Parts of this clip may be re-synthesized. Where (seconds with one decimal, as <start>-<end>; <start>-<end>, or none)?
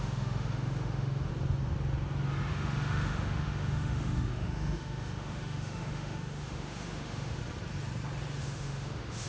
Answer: 0.0-1.3; 2.5-7.4; 8.4-9.3